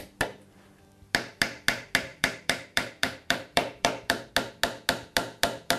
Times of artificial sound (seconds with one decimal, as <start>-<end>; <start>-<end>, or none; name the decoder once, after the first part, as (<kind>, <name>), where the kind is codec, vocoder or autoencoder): 2.1-4.3 (vocoder, BigVGAN v2)